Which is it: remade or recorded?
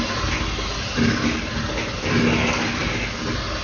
recorded